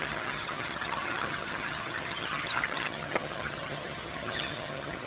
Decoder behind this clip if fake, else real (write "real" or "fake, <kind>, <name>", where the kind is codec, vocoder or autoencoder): fake, vocoder, HiFi-GAN